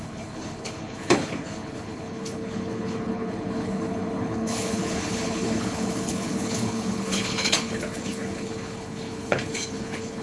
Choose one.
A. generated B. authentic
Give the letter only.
A